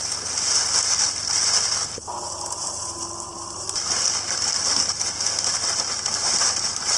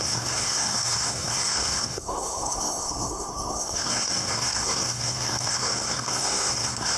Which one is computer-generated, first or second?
second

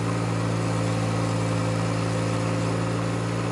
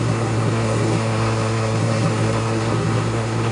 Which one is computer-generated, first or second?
second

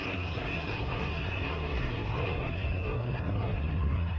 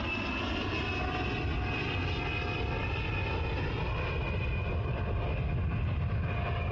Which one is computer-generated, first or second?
first